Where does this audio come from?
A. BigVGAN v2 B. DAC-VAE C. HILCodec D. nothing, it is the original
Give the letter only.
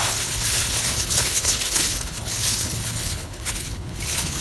C